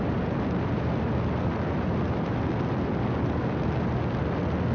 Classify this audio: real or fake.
real